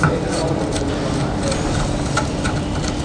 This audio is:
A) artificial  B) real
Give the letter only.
B